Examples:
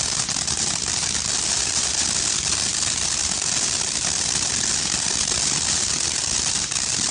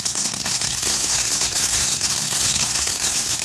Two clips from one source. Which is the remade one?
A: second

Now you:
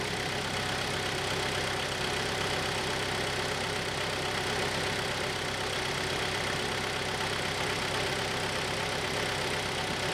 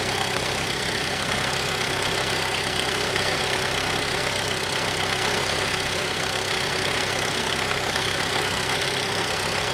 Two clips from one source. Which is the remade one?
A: second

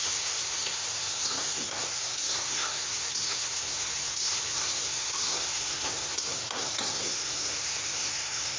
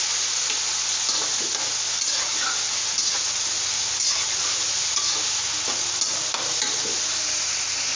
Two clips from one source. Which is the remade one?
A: first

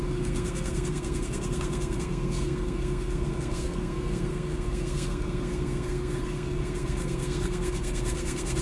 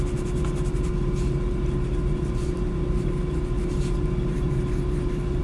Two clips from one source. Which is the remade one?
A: first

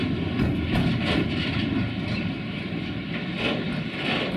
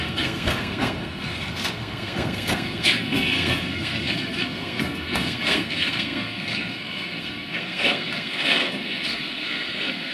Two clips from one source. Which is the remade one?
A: second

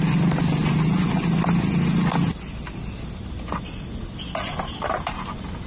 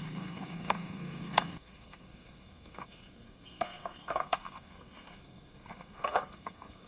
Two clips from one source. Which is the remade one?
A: second